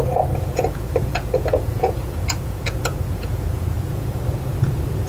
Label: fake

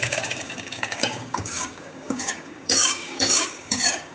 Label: fake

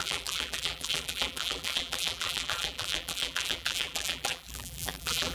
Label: fake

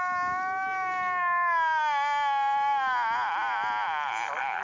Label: real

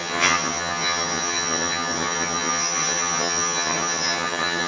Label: fake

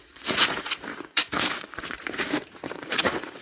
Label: fake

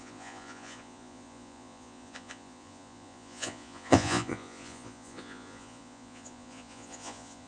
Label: fake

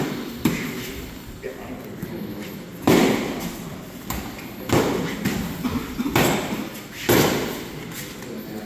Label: real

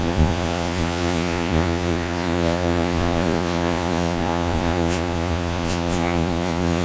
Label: fake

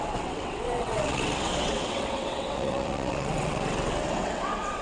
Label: fake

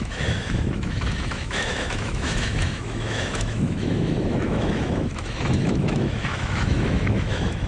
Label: fake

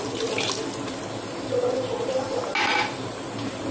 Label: real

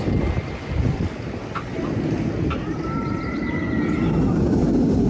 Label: fake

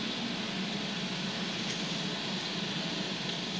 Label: real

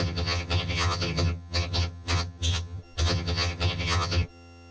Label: fake